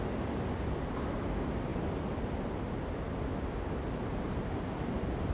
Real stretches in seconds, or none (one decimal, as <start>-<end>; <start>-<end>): 0.0-5.3